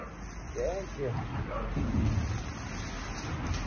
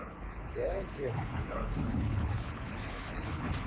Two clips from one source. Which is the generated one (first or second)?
second